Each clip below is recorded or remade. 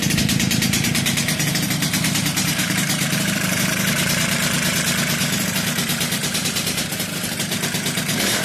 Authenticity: remade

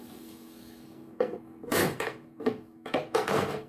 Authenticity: remade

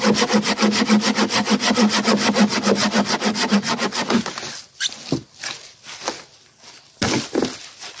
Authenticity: recorded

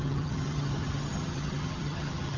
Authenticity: remade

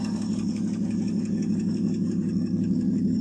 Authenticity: remade